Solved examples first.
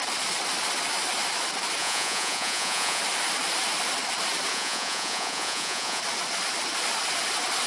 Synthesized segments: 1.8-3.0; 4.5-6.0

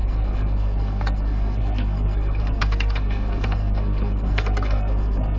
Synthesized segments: 0.0-5.4

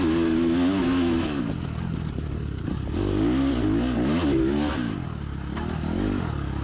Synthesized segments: 0.8-1.4